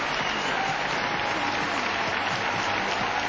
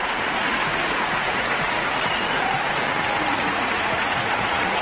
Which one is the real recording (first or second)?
first